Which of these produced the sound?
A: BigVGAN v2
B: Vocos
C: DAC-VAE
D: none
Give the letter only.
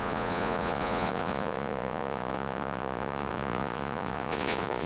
B